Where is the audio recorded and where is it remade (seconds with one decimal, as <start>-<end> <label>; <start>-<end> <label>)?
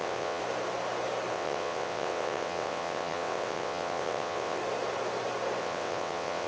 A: 0.0-0.4 remade; 0.4-1.3 recorded; 1.3-4.6 remade; 4.6-5.6 recorded; 5.6-6.5 remade